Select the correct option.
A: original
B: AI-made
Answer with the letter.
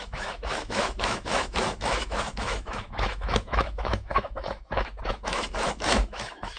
B